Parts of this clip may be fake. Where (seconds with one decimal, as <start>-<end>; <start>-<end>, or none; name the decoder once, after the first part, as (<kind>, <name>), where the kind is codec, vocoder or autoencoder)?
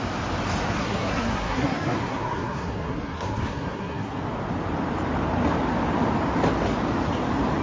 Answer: 0.8-4.2 (codec, SNAC)